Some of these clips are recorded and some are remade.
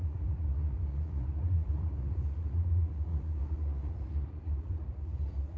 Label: remade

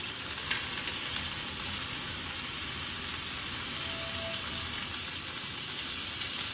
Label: recorded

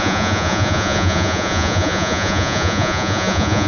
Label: remade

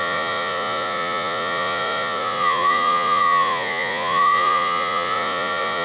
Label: remade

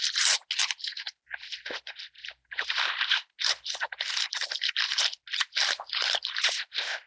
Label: recorded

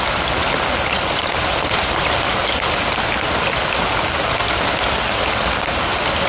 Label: recorded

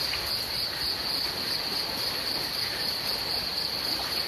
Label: recorded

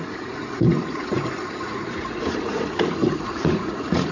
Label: remade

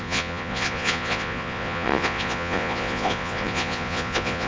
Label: remade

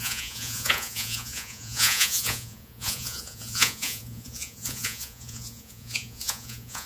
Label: remade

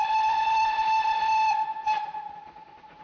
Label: recorded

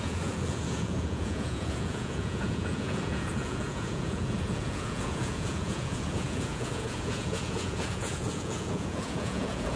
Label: remade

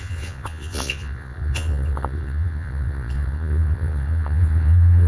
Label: remade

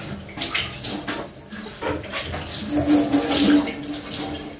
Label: recorded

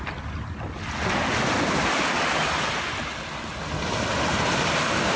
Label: recorded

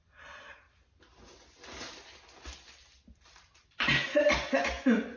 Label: recorded